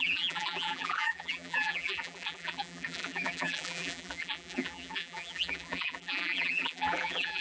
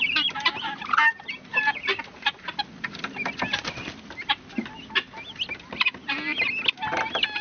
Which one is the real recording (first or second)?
second